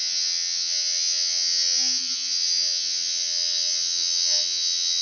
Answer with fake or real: fake